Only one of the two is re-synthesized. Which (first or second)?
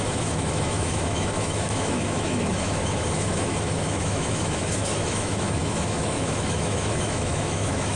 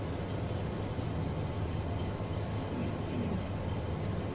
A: first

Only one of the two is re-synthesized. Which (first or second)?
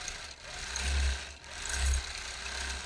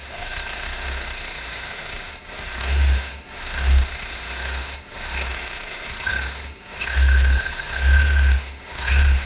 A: second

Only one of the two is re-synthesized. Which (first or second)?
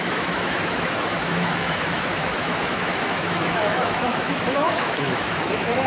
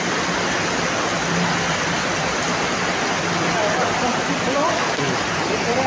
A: first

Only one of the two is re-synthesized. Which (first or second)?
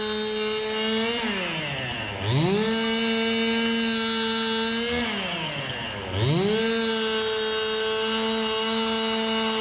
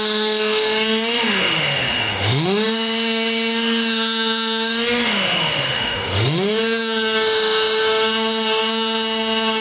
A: second